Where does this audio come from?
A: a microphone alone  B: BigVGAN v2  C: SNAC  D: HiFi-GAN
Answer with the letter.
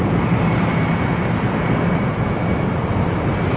A